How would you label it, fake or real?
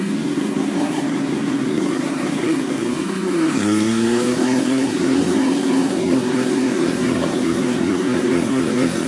fake